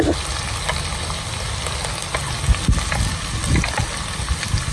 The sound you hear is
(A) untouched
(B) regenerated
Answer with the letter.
A